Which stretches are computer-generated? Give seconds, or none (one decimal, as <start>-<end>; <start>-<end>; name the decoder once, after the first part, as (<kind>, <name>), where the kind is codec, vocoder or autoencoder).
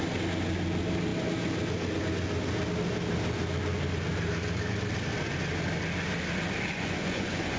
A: 6.7-7.6 (vocoder, Vocos)